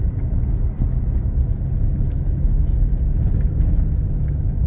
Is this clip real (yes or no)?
yes